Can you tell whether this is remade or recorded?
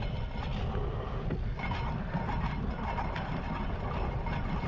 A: recorded